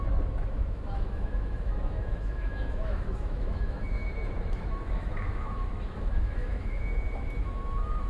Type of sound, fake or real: fake